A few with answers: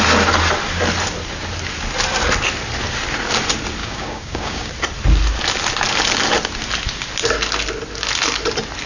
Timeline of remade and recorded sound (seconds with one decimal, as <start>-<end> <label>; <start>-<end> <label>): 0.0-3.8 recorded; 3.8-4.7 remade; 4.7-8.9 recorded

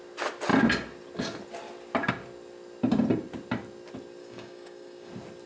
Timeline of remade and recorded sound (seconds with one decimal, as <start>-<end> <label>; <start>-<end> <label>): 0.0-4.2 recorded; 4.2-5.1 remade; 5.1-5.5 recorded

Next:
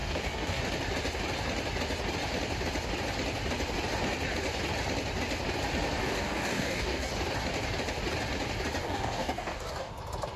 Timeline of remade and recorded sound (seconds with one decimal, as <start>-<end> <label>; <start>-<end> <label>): 0.0-0.6 remade; 0.6-6.0 recorded; 6.0-7.1 remade; 7.1-8.8 recorded; 8.8-9.9 remade; 9.9-10.4 recorded